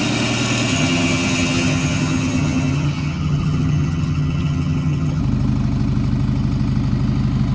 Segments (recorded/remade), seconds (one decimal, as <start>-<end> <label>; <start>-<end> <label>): 0.0-0.7 recorded; 0.7-5.2 remade; 5.2-7.5 recorded